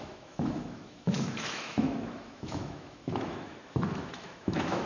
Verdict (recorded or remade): remade